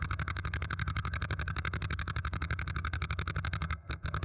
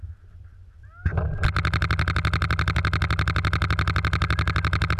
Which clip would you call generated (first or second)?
first